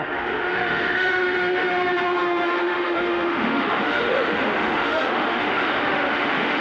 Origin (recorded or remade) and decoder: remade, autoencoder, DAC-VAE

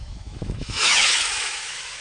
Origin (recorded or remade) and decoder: remade, autoencoder, DAC-VAE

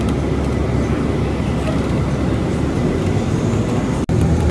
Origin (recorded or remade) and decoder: recorded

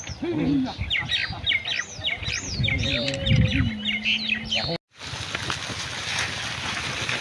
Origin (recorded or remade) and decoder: recorded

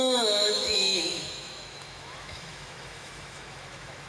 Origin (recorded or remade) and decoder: remade, autoencoder, DAC-VAE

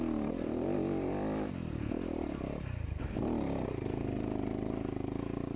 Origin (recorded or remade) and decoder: recorded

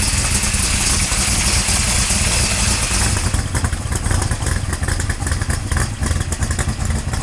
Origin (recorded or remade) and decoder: recorded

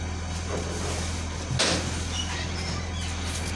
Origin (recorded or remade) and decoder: recorded